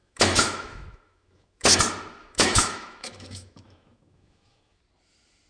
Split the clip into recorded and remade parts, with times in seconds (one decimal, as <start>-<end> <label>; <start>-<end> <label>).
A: 0.0-1.8 remade; 1.8-2.2 recorded; 2.2-4.8 remade; 4.8-5.5 recorded